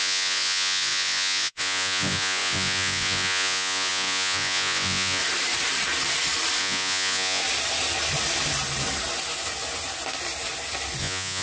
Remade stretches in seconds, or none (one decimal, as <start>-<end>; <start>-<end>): 0.0-5.2; 6.6-7.4; 11.0-11.4